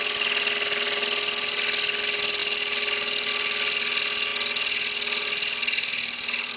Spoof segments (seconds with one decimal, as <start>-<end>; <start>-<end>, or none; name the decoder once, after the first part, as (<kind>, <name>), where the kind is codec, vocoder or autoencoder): none